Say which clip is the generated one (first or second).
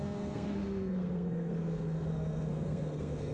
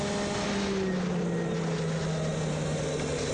first